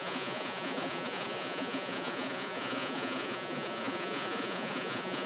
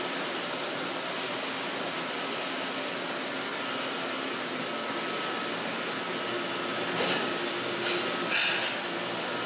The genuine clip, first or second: second